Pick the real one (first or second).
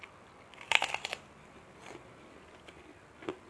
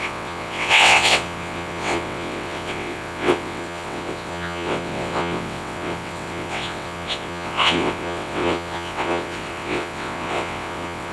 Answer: first